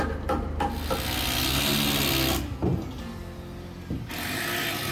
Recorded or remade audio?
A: recorded